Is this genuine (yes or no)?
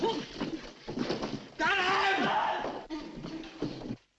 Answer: yes